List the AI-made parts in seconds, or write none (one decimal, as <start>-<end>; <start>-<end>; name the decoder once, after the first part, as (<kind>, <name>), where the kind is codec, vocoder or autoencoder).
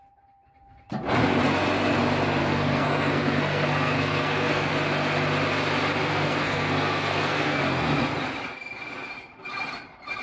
2.4-4.7 (codec, SNAC); 6.1-7.6